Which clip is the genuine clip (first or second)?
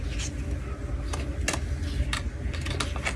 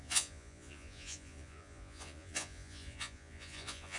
first